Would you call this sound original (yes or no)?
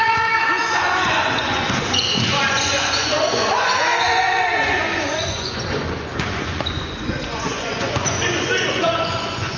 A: no